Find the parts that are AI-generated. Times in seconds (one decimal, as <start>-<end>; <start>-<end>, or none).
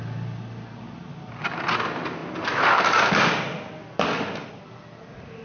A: none